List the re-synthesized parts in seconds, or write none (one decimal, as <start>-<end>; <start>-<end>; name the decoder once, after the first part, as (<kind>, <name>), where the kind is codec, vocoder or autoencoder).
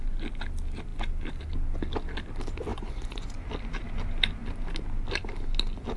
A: 2.7-3.5 (vocoder, Vocos)